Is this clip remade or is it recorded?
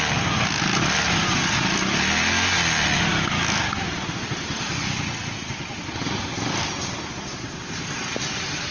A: recorded